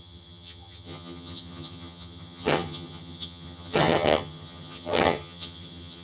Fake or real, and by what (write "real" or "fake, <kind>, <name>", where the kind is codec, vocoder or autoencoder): fake, vocoder, HiFi-GAN